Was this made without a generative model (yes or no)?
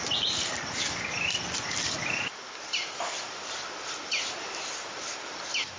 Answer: yes